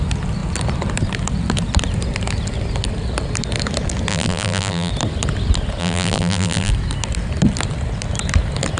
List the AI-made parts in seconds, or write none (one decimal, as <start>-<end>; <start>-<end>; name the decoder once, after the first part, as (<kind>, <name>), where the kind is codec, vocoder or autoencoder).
4.1-4.9 (vocoder, BigVGAN v2); 5.8-6.7